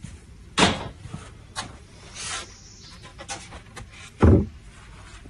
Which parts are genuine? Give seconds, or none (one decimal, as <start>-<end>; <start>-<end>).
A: 1.3-5.3